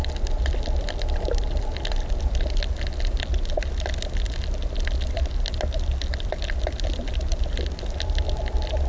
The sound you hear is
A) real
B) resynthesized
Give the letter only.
A